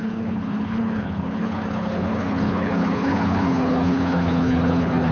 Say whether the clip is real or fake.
fake